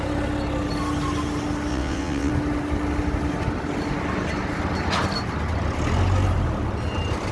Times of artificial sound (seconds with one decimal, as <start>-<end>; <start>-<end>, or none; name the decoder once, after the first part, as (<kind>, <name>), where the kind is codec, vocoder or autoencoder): 1.7-2.3 (vocoder, WaveNeXt)